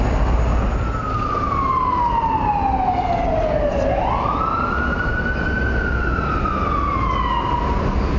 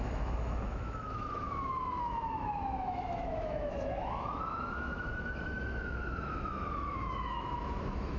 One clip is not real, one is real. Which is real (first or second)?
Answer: first